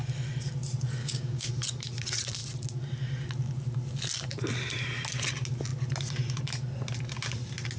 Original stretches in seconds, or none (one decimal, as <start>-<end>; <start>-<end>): 0.0-1.0; 1.5-7.8